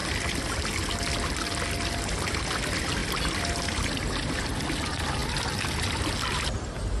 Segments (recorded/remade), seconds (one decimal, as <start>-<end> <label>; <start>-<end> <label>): 0.0-2.1 recorded; 2.1-5.2 remade; 5.2-7.0 recorded